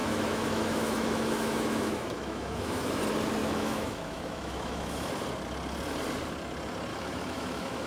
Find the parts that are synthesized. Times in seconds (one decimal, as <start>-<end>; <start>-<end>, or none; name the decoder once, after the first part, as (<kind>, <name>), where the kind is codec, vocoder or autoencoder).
0.0-3.0 (autoencoder, DAC-VAE); 3.4-5.1; 6.9-7.9